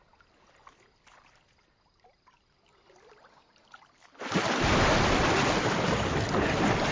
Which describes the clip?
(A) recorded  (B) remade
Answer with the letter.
A